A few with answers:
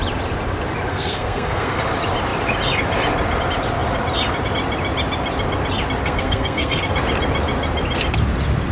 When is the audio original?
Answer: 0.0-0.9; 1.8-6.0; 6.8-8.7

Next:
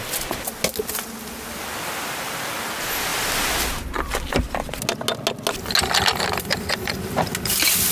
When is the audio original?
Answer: 0.0-7.9

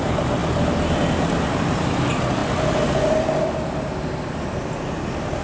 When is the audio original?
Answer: 0.0-5.4

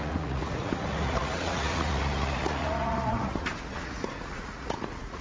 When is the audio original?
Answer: none

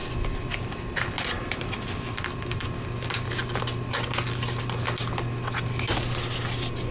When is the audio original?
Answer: 0.0-6.9

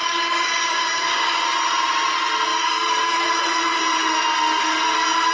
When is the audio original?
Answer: 1.4-2.5; 3.3-5.3

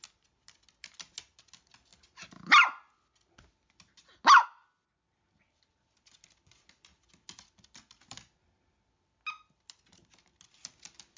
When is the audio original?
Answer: 0.0-11.2